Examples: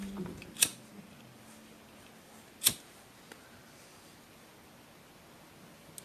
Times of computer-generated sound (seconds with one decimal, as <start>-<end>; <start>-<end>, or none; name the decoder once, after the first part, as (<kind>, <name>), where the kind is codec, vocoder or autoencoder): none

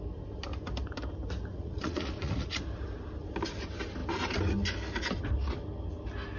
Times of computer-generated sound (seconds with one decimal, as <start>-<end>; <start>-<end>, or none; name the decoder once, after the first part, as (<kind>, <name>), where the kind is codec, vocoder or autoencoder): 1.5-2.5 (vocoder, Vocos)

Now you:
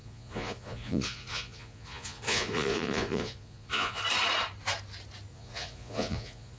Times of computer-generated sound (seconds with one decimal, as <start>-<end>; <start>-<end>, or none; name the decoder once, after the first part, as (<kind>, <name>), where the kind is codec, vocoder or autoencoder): 0.0-4.0 (vocoder, Vocos); 5.3-6.6